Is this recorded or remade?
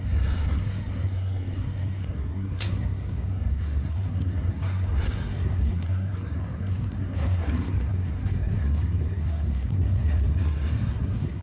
remade